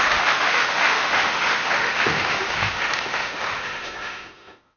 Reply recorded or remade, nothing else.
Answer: remade